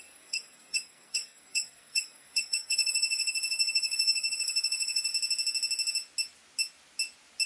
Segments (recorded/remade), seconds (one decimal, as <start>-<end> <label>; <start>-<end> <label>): 0.0-5.1 remade; 5.1-7.5 recorded